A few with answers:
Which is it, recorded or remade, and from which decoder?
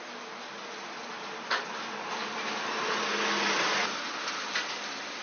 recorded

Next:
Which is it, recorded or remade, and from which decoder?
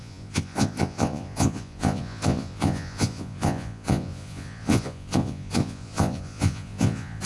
remade, vocoder, Vocos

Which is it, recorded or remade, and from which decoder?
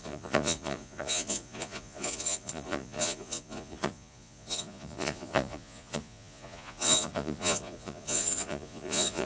remade, vocoder, Vocos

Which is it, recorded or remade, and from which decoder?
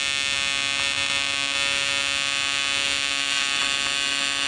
recorded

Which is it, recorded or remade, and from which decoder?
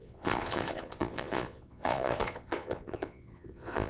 remade, vocoder, Vocos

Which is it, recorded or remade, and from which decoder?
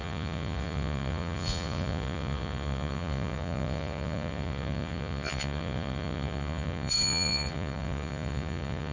remade, vocoder, Vocos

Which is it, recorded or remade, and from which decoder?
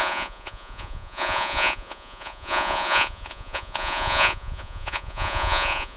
remade, vocoder, Vocos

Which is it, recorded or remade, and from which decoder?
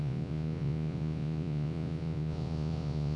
remade, vocoder, Vocos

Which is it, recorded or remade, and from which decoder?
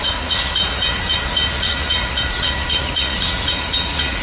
remade, vocoder, Vocos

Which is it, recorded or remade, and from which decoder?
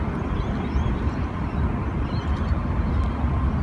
recorded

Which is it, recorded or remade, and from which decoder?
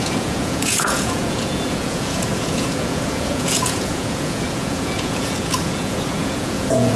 remade, vocoder, Vocos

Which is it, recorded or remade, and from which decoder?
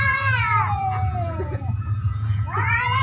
remade, vocoder, Vocos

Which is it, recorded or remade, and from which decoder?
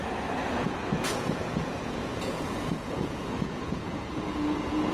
remade, vocoder, Vocos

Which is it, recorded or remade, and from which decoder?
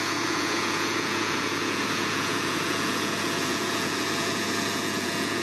remade, vocoder, Vocos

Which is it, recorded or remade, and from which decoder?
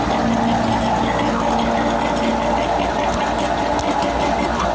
recorded